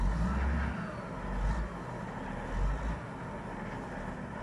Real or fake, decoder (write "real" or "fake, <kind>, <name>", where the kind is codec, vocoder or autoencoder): real